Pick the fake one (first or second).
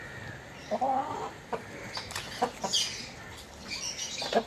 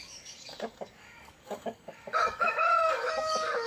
second